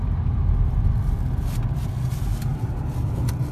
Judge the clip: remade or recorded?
recorded